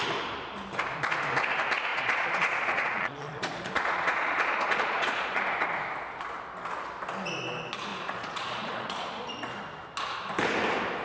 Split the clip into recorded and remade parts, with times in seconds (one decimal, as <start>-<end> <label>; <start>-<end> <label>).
0.0-1.9 recorded; 1.9-5.4 remade; 5.4-7.9 recorded; 7.9-9.5 remade; 9.5-11.0 recorded